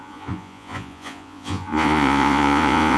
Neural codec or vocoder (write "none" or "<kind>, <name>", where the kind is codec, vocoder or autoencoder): vocoder, Vocos